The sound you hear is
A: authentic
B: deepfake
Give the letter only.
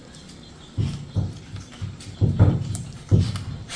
A